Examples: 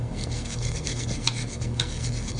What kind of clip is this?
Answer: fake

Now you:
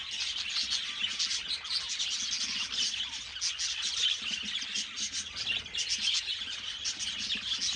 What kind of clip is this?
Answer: real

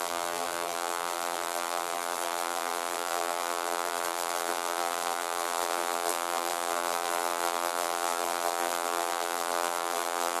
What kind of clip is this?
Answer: fake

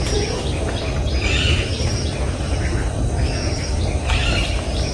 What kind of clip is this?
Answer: fake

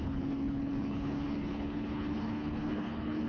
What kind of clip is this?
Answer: fake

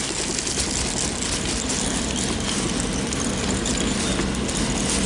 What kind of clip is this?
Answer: real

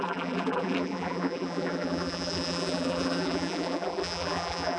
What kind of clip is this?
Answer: fake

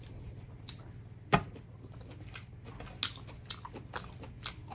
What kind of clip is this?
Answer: real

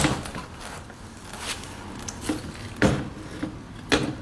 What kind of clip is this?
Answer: real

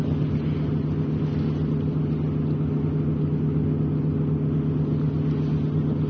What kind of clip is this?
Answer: real